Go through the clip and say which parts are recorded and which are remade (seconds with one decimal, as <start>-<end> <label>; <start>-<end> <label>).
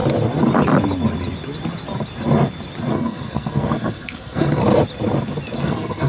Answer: 0.0-2.9 recorded; 2.9-4.6 remade; 4.6-5.6 recorded; 5.6-6.1 remade